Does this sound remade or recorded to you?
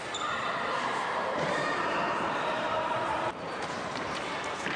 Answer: remade